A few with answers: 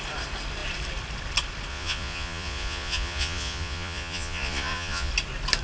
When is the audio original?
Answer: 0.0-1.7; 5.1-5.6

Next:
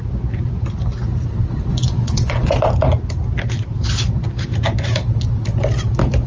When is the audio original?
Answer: 0.0-1.7; 2.5-6.3

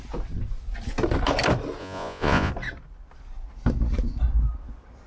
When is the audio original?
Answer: 0.0-1.8; 2.5-5.1

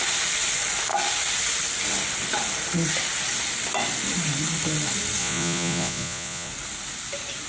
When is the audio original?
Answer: 0.0-5.2; 6.5-7.5

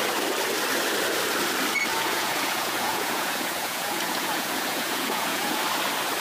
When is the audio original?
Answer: 0.0-1.9; 5.6-6.2

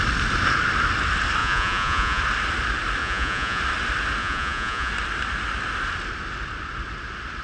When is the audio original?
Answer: 0.0-1.4; 2.2-3.0; 3.6-4.2; 4.9-7.4

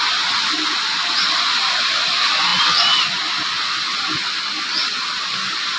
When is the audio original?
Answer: 0.0-5.8

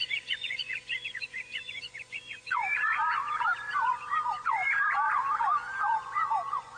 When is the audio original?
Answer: none